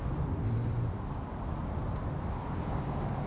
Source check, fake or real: real